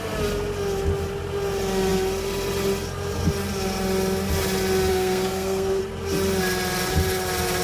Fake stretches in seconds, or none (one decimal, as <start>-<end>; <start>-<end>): 4.9-5.8